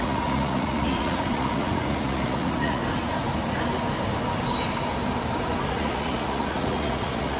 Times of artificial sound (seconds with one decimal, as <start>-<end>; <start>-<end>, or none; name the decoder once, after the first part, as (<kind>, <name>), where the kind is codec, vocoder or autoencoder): 0.0-2.8 (vocoder, Vocos); 5.7-7.4

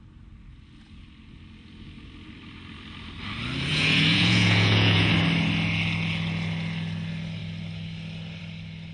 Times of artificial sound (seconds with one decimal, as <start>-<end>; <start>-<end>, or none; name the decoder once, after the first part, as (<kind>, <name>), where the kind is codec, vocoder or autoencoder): 3.7-5.1 (vocoder, Vocos)